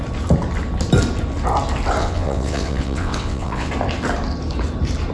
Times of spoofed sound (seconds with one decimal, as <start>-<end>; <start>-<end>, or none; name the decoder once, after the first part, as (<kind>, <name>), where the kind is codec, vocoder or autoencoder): 2.0-3.7 (vocoder, WaveNeXt)